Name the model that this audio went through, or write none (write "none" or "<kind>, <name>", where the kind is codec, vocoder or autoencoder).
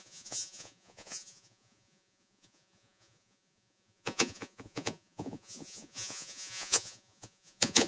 vocoder, Vocos